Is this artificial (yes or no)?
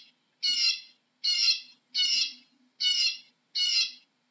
no